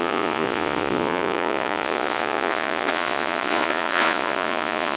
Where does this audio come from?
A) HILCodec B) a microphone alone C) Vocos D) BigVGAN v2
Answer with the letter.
C